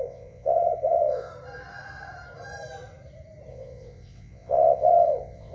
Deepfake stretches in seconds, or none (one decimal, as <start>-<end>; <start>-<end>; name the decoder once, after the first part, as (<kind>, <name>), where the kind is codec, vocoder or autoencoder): 0.0-1.3 (vocoder, WaveNeXt); 3.5-5.5